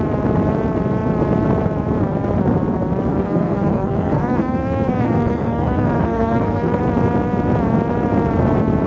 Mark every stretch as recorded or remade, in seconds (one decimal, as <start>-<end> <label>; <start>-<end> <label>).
0.0-3.1 recorded; 3.1-6.8 remade; 6.8-8.9 recorded